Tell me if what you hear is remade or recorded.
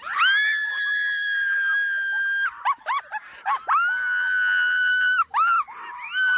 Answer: recorded